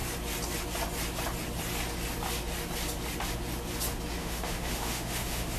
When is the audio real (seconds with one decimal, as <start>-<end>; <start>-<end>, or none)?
0.0-4.2